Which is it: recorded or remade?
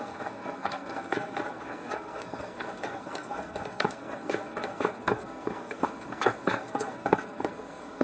remade